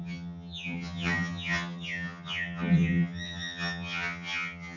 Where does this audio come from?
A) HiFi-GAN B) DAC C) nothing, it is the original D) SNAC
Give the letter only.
A